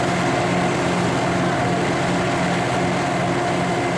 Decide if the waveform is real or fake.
real